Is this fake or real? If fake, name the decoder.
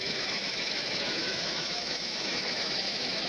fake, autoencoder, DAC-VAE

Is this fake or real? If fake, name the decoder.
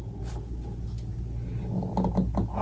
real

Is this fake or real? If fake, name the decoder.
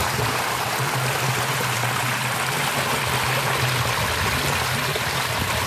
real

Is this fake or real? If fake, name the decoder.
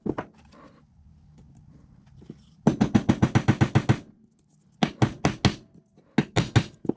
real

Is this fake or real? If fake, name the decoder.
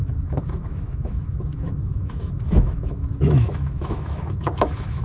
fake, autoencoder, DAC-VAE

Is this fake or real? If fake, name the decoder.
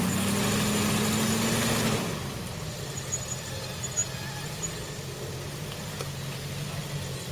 real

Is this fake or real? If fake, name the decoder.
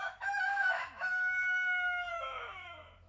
fake, autoencoder, DAC-VAE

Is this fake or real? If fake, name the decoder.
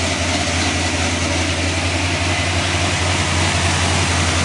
real